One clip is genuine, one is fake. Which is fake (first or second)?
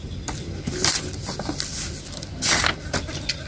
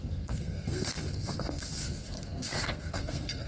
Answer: second